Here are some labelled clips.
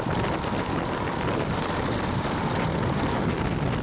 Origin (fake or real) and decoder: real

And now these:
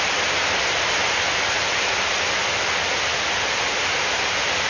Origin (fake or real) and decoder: real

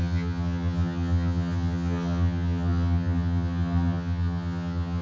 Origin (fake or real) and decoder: fake, vocoder, HiFi-GAN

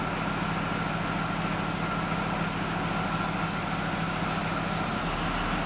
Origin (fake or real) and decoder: real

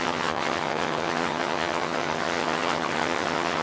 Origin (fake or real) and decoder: fake, vocoder, HiFi-GAN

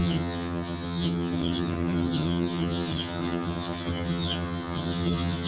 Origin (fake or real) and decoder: fake, vocoder, HiFi-GAN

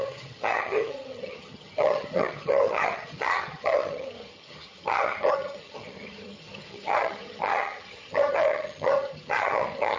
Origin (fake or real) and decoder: fake, vocoder, HiFi-GAN